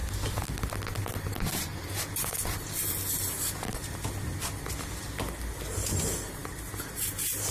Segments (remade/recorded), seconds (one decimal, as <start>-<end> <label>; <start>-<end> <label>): 0.0-7.5 recorded